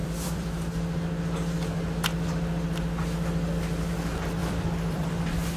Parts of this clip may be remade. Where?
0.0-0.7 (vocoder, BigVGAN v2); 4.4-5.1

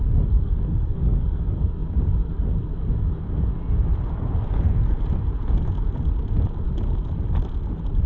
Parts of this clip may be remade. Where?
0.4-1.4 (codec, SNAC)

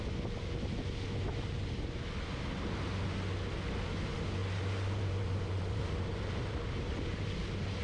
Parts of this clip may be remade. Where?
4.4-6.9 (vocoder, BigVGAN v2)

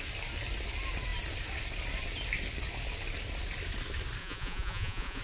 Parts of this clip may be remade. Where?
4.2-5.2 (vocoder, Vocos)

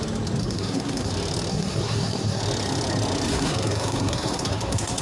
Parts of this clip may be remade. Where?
0.4-1.1 (codec, SNAC); 1.5-2.4; 3.3-5.0